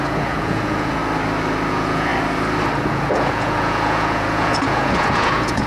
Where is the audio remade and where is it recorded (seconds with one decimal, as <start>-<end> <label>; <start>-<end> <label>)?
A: 0.0-1.0 remade; 1.0-1.7 recorded; 1.7-2.1 remade; 2.1-2.9 recorded; 2.9-5.7 remade